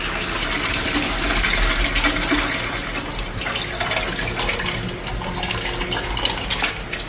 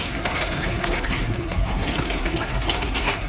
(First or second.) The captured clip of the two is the first